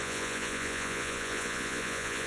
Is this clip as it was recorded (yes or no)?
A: no